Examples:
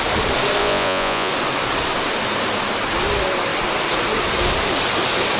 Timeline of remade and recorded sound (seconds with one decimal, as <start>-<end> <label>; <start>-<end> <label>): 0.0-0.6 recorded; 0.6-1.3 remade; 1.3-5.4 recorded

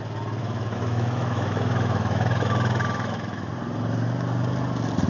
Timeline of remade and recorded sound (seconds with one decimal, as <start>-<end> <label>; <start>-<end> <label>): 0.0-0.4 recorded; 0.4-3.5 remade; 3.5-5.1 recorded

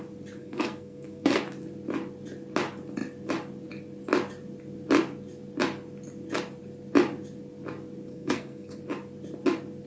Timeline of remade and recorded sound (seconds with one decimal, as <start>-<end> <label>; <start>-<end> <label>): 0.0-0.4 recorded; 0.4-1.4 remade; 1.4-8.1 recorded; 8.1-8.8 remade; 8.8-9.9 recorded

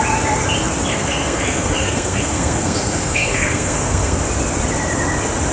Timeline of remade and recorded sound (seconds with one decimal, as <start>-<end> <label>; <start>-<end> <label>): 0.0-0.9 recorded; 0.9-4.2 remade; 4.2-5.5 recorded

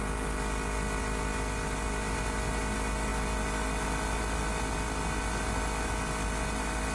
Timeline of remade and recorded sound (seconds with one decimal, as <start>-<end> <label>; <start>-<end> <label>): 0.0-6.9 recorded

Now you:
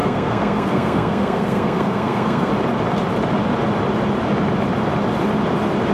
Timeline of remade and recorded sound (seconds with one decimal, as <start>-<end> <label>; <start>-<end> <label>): 0.0-2.5 remade; 2.5-5.9 recorded

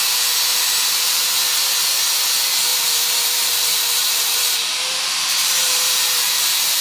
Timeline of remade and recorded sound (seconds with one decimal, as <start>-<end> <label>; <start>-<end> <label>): 0.0-0.5 recorded; 0.5-1.5 remade; 1.5-2.7 recorded; 2.7-6.8 remade